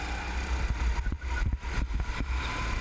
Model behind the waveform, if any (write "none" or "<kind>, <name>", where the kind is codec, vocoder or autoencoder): none